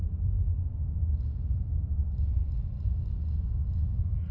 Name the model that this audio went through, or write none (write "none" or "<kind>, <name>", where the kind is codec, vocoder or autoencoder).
none